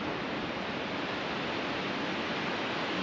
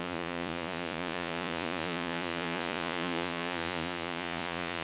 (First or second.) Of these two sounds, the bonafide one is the first